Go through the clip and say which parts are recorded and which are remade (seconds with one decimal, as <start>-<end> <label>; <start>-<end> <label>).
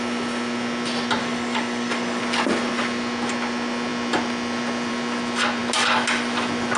0.0-1.2 recorded; 1.2-2.2 remade; 2.2-6.8 recorded